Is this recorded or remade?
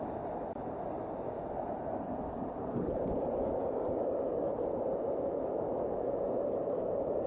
recorded